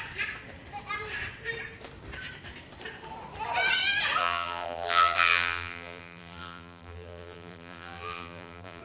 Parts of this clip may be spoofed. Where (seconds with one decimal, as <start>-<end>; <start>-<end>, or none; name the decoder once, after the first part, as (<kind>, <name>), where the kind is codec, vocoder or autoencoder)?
4.2-8.8 (vocoder, BigVGAN v2)